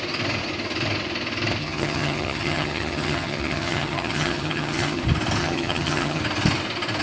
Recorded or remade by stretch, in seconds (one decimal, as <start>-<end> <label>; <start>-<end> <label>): 0.0-1.6 recorded; 1.6-5.0 remade; 5.0-5.4 recorded; 5.4-6.2 remade; 6.2-7.0 recorded